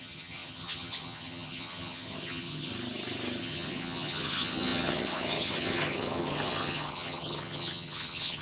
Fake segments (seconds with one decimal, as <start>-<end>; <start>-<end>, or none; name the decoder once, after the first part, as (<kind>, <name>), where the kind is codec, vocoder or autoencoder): 0.0-2.7 (vocoder, HiFi-GAN); 3.4-8.4